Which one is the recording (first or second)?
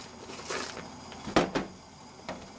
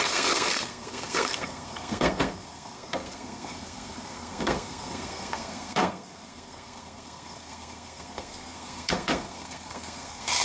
first